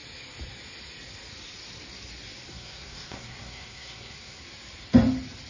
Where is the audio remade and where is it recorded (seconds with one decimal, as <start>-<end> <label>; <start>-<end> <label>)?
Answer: 0.0-2.5 recorded; 2.5-4.4 remade; 4.4-5.5 recorded